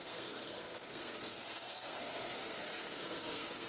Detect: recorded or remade remade